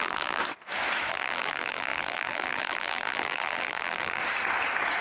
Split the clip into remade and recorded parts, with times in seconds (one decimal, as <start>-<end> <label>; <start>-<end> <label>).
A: 0.0-0.4 remade; 0.4-1.1 recorded; 1.1-4.2 remade; 4.2-5.0 recorded